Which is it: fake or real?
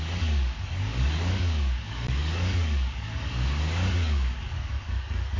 fake